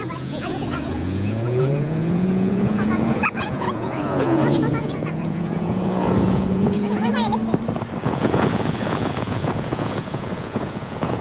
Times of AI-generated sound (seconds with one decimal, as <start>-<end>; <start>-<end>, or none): 0.0-7.1; 8.0-11.2